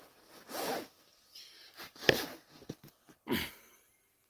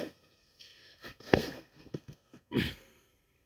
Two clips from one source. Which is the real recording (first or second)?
first